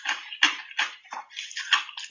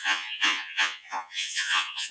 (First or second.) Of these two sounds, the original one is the first